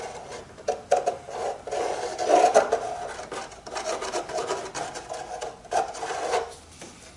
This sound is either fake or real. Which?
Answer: real